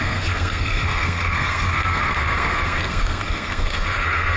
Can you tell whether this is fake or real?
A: fake